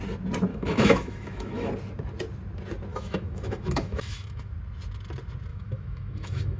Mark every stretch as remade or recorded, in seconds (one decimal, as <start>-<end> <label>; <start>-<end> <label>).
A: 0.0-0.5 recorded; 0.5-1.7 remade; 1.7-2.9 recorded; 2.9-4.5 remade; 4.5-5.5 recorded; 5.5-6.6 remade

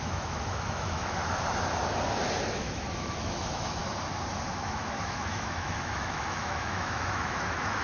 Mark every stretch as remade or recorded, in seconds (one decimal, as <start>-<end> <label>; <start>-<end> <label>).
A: 0.0-1.2 remade; 1.2-2.6 recorded; 2.6-3.8 remade; 3.8-4.5 recorded; 4.5-7.8 remade

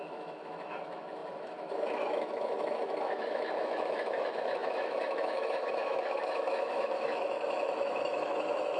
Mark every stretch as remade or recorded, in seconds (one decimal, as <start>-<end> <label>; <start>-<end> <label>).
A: 0.0-8.8 remade